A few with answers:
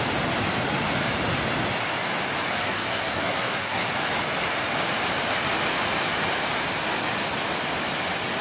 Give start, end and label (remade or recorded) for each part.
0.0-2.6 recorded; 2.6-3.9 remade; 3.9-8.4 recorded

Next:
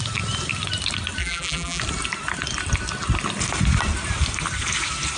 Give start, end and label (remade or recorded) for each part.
0.0-1.2 recorded; 1.2-1.8 remade; 1.8-5.2 recorded

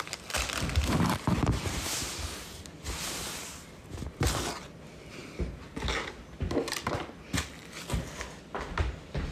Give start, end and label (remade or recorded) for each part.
0.0-9.3 recorded

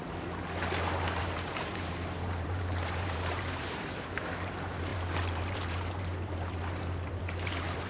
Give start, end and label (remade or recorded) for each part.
0.0-1.2 recorded; 1.2-7.9 remade

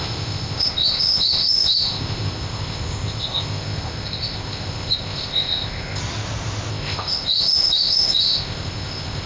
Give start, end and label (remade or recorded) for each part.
0.0-6.0 remade; 6.0-6.7 recorded; 6.7-9.3 remade

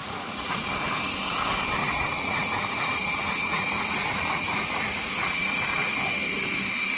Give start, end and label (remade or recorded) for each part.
0.0-0.7 remade; 0.7-1.8 recorded; 1.8-6.0 remade; 6.0-7.0 recorded

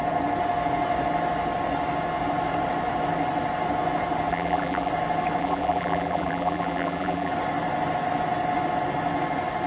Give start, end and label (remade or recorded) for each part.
0.0-4.3 recorded; 4.3-4.9 remade; 4.9-5.4 recorded; 5.4-7.3 remade; 7.3-9.7 recorded

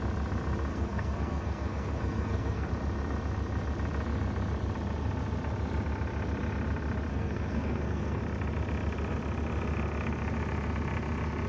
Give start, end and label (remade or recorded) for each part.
0.0-0.7 recorded; 0.7-2.7 remade; 2.7-7.1 recorded; 7.1-8.2 remade; 8.2-11.5 recorded